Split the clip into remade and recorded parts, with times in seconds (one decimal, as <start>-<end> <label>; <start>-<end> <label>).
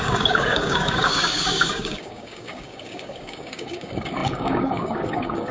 0.0-5.5 remade